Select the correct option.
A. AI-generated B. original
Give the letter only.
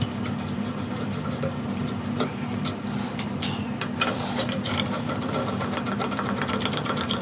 B